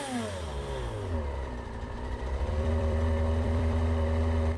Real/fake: fake